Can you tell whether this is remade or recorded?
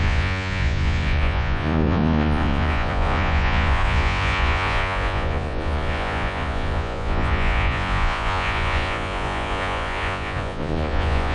remade